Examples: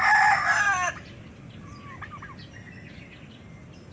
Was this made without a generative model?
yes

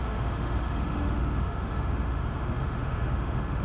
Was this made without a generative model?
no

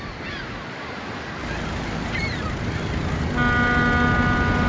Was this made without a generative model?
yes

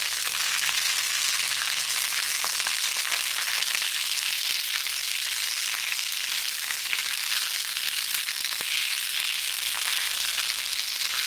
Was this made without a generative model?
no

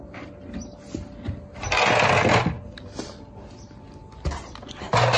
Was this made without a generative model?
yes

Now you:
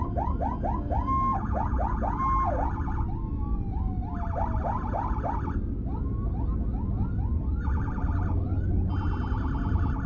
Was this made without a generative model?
yes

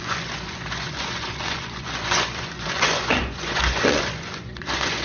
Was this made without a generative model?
no